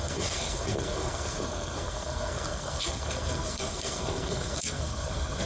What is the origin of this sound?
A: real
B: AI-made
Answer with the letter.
B